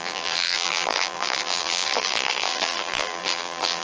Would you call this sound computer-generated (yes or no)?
yes